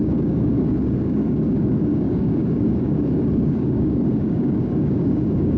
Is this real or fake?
fake